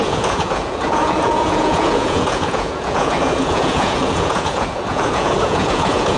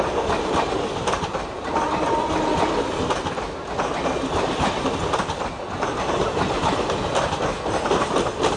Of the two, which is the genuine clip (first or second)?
second